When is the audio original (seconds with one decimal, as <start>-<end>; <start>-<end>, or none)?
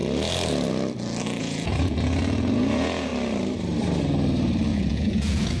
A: 0.0-1.4; 3.1-4.7